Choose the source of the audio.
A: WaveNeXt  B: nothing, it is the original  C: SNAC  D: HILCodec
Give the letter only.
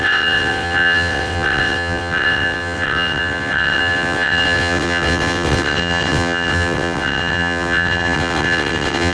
A